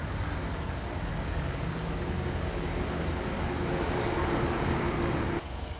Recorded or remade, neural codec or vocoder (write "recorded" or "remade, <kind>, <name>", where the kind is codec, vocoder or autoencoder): remade, codec, DAC